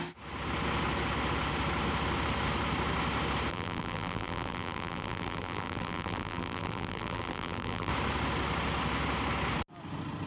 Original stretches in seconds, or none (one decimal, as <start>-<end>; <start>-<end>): 0.0-3.5; 7.9-10.3